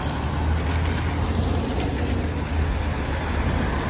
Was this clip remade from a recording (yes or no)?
no